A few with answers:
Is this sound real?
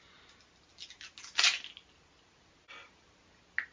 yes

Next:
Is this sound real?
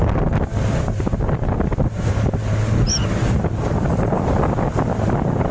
yes